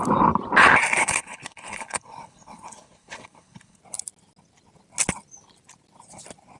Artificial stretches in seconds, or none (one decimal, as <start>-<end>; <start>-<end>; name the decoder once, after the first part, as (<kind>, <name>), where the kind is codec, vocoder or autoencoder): 1.0-3.8 (codec, HILCodec)